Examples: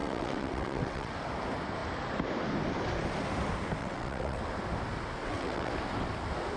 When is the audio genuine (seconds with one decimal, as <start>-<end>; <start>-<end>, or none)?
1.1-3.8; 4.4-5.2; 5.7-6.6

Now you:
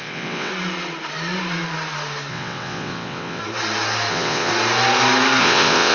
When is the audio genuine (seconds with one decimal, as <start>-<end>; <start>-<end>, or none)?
0.5-2.3; 3.4-4.1; 4.5-5.4

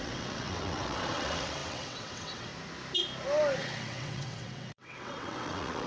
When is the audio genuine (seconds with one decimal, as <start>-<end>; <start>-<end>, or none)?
2.5-3.6

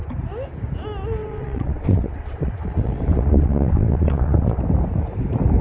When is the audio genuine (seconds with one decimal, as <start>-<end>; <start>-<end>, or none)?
0.0-1.2; 4.6-5.6

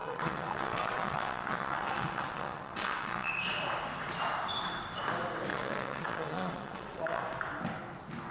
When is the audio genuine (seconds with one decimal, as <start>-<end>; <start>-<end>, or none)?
3.3-5.5; 7.2-8.3